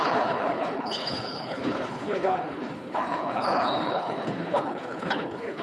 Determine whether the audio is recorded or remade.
remade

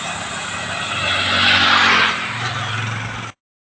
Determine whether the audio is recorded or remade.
recorded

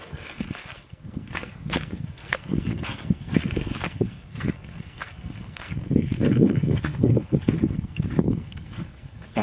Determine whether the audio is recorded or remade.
remade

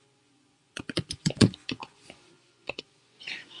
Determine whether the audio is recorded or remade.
remade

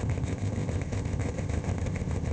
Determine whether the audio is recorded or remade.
remade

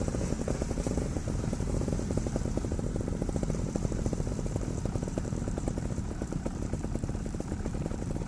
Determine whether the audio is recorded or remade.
remade